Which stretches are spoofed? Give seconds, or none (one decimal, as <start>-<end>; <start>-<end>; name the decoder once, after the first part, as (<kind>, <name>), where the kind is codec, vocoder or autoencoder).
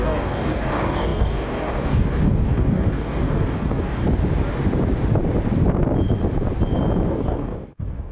0.0-4.0 (codec, DAC); 7.1-8.1